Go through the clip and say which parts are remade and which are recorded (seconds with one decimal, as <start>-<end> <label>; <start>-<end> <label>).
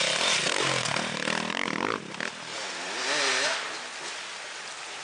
0.0-5.0 recorded